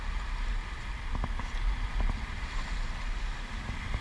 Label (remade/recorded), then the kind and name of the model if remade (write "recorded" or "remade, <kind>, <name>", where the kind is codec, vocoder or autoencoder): recorded